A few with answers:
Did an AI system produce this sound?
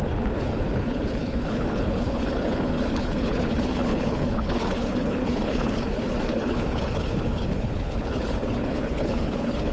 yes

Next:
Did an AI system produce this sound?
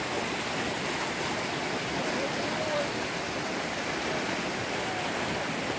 no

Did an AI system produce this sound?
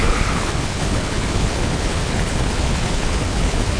yes